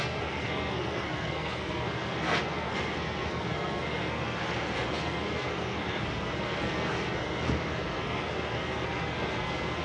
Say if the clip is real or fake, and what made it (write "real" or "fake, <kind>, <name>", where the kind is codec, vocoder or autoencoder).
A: fake, codec, SNAC